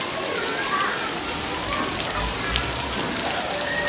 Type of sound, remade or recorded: recorded